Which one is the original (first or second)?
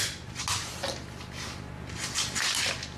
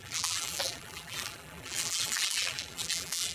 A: first